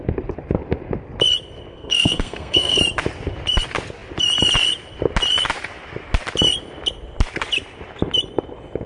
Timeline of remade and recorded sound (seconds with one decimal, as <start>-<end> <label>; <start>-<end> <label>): 0.0-1.7 recorded; 1.7-2.8 remade; 2.8-8.9 recorded